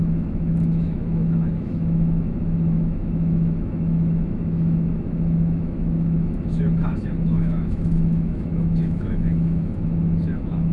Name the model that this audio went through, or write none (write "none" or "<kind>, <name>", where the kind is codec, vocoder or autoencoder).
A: autoencoder, DAC-VAE